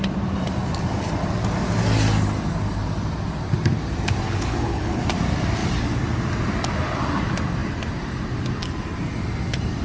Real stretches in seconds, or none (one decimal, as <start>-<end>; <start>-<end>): 0.0-4.2; 5.0-9.8